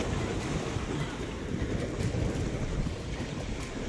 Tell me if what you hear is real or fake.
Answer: fake